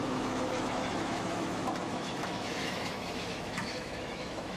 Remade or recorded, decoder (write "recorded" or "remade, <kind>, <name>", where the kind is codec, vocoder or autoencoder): remade, autoencoder, DAC-VAE